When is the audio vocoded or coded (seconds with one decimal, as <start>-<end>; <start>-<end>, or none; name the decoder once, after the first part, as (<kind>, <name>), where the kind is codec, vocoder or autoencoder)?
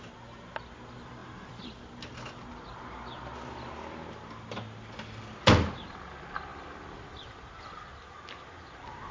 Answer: 1.2-1.8 (vocoder, BigVGAN v2); 6.5-7.0